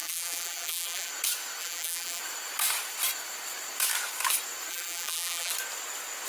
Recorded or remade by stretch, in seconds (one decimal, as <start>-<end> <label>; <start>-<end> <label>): 0.0-1.1 remade; 1.1-1.6 recorded; 1.6-2.2 remade; 2.2-4.7 recorded; 4.7-5.5 remade; 5.5-6.3 recorded